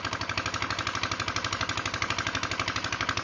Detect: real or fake real